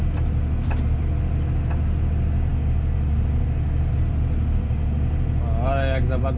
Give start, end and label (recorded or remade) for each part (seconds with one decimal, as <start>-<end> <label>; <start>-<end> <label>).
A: 0.0-6.4 recorded